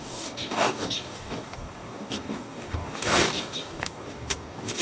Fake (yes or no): yes